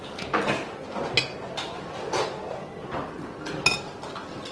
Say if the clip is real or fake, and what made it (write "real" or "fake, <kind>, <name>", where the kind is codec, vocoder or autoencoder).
real